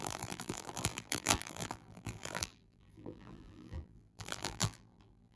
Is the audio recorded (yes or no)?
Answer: no